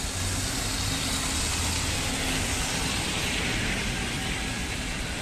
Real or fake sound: real